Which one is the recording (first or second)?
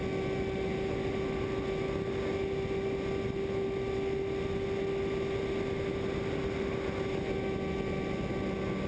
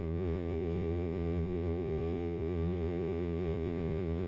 first